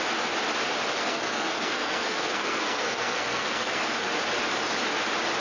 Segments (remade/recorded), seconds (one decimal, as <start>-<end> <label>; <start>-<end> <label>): 0.0-0.9 recorded; 0.9-4.1 remade; 4.1-5.4 recorded